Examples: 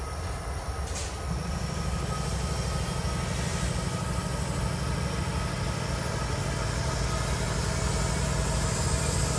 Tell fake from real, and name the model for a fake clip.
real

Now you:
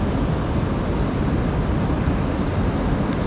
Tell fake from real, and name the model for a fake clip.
real